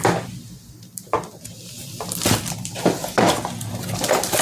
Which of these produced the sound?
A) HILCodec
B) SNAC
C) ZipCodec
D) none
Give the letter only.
D